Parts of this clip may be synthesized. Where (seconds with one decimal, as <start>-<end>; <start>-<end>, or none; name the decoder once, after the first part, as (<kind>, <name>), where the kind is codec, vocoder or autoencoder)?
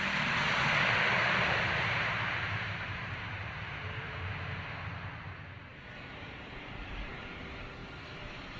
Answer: 1.2-4.6 (vocoder, BigVGAN v2); 5.7-7.2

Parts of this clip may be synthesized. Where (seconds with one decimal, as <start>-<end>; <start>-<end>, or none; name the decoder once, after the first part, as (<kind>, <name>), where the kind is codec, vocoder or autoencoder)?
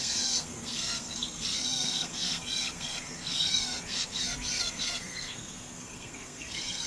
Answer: 0.0-6.9 (codec, SNAC)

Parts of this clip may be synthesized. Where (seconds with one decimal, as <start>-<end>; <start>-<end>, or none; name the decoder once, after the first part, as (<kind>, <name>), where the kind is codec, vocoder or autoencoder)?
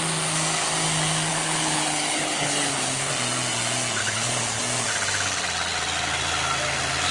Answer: 1.3-3.1 (codec, HILCodec); 4.0-4.6